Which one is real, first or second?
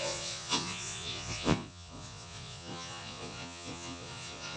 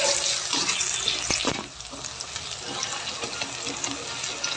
second